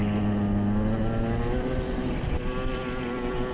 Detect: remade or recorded recorded